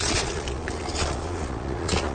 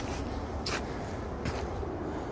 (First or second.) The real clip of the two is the second